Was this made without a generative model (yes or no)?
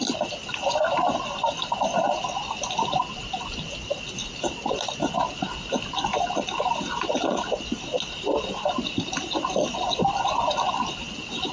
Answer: yes